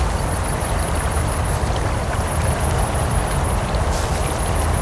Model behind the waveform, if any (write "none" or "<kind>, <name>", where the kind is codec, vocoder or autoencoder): none